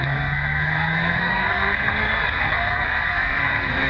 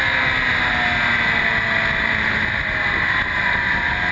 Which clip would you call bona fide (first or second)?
second